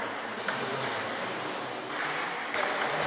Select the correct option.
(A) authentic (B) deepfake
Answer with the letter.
A